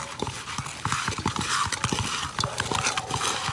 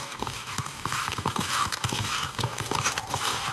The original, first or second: first